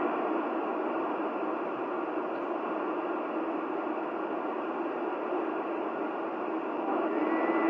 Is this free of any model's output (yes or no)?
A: yes